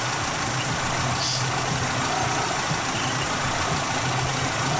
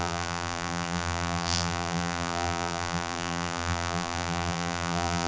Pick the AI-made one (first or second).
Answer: second